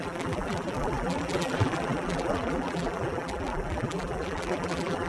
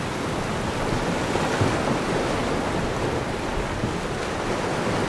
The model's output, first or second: first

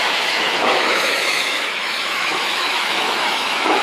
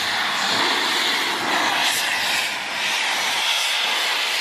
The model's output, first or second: first